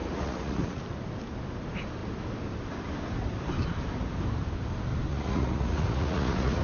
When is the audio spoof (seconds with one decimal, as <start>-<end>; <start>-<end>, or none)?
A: 0.0-0.8; 5.1-6.6